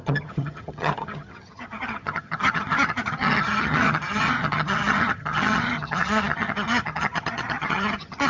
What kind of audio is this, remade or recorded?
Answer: remade